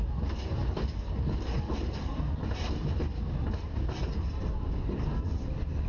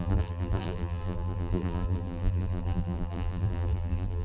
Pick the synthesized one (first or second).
second